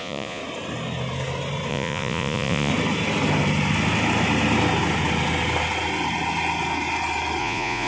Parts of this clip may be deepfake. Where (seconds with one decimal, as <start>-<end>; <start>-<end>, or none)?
0.0-0.4; 1.7-2.7; 7.4-7.9